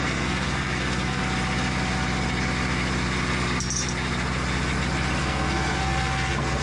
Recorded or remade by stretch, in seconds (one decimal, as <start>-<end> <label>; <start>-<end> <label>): 0.0-1.2 remade; 1.2-5.2 recorded; 5.2-6.6 remade